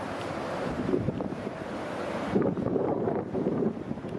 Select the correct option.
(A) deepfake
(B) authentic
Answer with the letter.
A